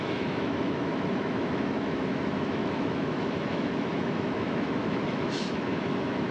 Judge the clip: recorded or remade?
remade